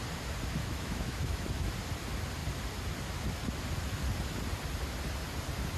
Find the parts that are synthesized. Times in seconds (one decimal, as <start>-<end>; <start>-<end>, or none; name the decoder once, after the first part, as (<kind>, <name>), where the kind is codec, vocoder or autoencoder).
0.6-1.7 (autoencoder, DAC-VAE)